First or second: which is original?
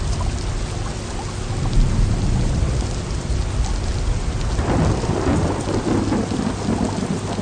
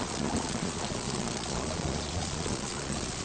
first